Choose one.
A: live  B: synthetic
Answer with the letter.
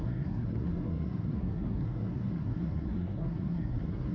B